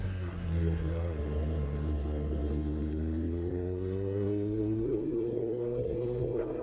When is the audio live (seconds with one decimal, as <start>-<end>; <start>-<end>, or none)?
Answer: none

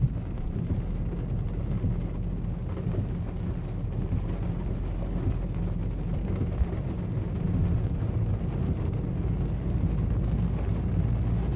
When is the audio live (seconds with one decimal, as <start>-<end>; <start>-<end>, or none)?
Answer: 0.0-11.6

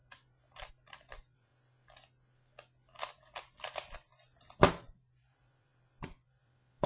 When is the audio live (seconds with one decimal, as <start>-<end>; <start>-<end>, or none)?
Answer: 1.5-3.1; 4.1-4.7

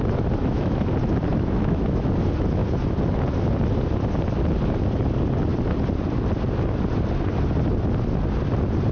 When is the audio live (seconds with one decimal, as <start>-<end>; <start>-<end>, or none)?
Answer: 0.0-0.4; 0.9-1.3; 2.1-8.9

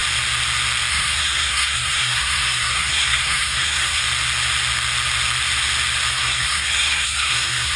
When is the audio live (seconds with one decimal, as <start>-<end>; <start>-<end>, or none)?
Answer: 0.0-0.9; 4.0-6.1

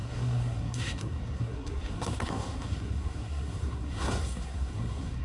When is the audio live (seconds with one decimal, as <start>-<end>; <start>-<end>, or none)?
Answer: none

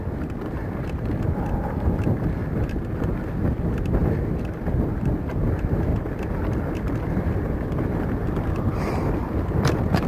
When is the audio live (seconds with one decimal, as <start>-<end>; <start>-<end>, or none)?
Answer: 0.0-5.9; 9.4-10.1